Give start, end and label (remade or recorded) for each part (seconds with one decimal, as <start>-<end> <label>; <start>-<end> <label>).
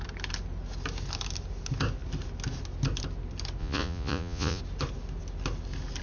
0.0-3.6 recorded; 3.6-4.6 remade; 4.6-6.0 recorded